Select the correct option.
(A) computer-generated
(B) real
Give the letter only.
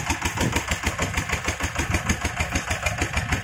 B